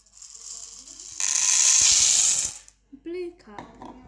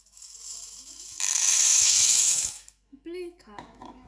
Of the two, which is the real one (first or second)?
first